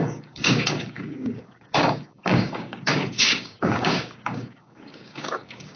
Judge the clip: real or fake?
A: fake